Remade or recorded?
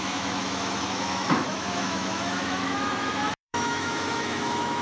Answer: remade